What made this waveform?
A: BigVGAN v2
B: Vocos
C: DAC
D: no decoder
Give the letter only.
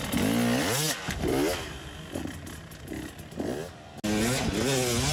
D